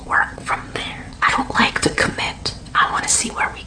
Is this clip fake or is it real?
fake